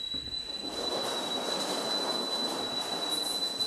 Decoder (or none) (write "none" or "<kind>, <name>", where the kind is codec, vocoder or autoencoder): none